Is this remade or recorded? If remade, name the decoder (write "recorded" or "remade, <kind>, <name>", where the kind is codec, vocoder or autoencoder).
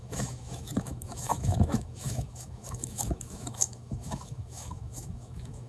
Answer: remade, autoencoder, DAC-VAE